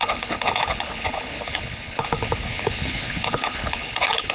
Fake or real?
fake